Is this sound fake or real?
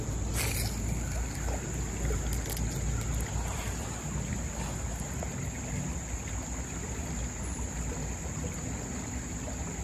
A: real